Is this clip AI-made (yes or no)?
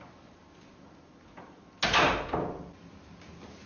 no